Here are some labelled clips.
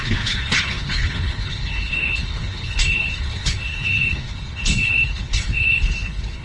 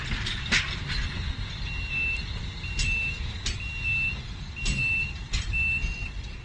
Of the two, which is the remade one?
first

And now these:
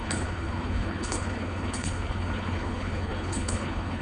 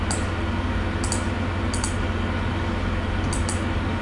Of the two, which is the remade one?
first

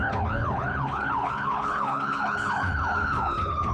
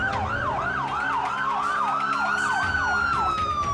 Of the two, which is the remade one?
first